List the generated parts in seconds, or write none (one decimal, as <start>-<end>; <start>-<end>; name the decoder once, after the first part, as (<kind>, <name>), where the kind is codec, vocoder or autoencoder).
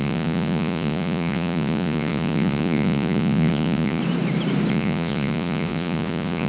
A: 0.0-4.0 (vocoder, Vocos); 4.7-6.5